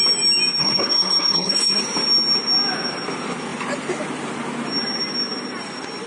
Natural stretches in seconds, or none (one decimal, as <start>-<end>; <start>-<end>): 0.0-0.6; 1.8-6.1